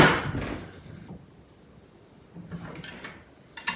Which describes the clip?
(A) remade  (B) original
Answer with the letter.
B